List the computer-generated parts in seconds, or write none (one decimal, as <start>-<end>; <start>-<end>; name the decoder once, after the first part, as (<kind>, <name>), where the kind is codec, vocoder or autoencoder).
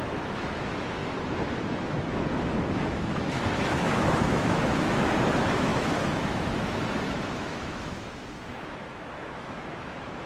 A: 0.0-1.0 (autoencoder, DAC-VAE); 1.7-10.3